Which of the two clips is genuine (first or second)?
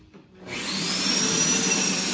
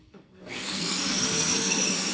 first